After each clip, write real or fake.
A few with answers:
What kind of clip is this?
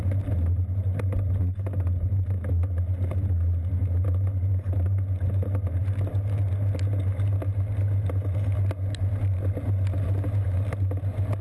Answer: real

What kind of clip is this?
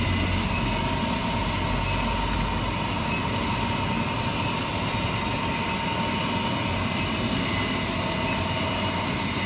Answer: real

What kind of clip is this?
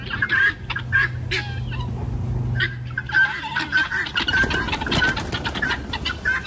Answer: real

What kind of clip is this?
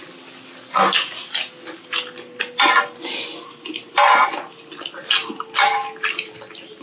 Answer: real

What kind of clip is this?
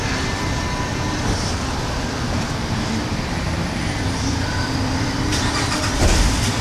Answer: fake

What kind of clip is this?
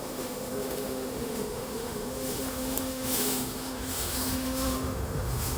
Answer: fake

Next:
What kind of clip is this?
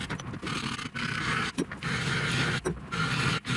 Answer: real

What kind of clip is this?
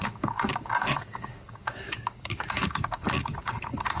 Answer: fake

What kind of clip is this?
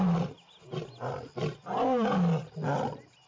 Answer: real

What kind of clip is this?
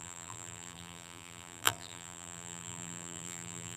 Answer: fake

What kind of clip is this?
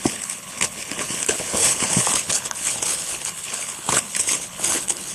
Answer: fake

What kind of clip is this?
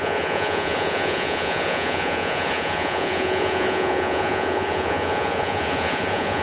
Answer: fake